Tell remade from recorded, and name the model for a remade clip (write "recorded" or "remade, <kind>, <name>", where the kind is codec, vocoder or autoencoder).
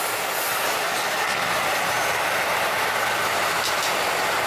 recorded